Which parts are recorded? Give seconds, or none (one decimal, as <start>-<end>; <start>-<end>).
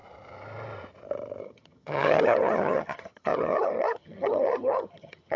0.0-1.4